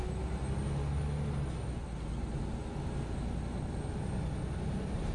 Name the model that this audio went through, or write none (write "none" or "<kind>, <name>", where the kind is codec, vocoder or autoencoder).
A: none